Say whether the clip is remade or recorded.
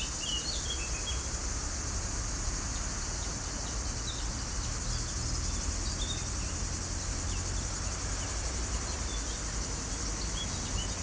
recorded